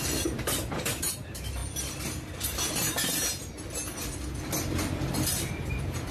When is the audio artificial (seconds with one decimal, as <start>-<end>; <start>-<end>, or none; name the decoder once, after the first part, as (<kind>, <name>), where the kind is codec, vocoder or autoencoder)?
0.0-1.6 (vocoder, BigVGAN v2); 5.3-6.1